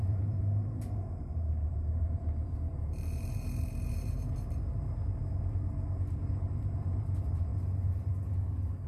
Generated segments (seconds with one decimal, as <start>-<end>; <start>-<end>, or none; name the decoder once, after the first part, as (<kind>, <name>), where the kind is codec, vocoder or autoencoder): 0.0-5.2 (vocoder, BigVGAN v2); 6.3-7.5